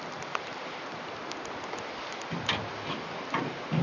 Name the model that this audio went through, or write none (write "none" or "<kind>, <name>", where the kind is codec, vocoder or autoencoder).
none